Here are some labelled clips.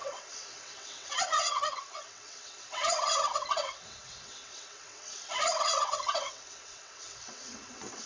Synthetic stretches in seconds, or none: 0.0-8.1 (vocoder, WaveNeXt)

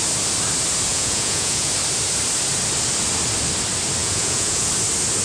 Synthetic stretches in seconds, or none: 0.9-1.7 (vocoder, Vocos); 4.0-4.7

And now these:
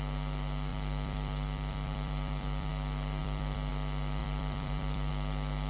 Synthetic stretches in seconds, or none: 0.7-2.7 (vocoder, BigVGAN v2); 3.2-3.7; 4.2-5.1